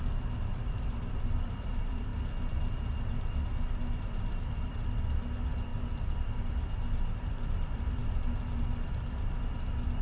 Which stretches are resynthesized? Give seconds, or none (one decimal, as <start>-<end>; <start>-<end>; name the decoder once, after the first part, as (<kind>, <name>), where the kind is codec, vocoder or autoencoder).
0.0-2.1 (vocoder, BigVGAN v2); 4.0-5.7; 7.2-8.0; 8.6-10.0